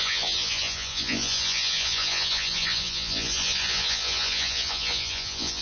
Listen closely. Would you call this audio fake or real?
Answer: fake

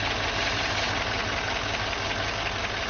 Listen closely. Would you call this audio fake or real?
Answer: real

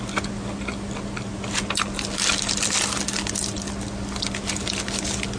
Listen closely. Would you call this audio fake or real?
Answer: real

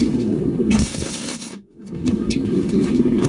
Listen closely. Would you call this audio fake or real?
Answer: fake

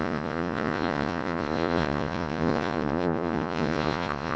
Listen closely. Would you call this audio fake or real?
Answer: fake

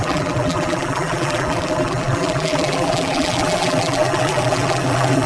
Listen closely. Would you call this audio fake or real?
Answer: fake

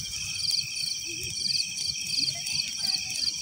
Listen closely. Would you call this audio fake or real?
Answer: real